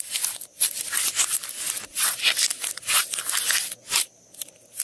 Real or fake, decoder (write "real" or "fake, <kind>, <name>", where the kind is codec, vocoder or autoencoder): real